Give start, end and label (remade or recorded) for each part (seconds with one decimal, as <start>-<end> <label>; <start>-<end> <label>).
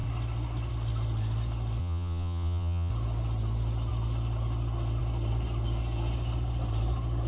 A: 0.0-1.8 recorded; 1.8-2.9 remade; 2.9-7.3 recorded